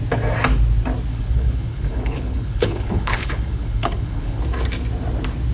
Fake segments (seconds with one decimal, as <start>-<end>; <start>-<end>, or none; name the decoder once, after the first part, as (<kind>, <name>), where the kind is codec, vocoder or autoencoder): 1.1-4.4 (codec, HILCodec)